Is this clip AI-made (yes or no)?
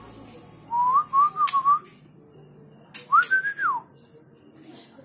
no